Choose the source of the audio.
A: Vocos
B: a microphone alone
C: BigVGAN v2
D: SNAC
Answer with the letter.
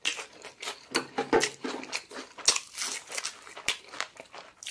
B